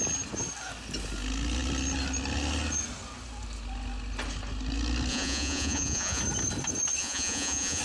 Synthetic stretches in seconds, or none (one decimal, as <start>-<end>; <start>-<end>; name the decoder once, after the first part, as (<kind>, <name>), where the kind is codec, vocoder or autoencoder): 5.1-6.2 (vocoder, Vocos); 7.0-7.8